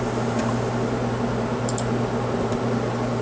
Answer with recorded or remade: remade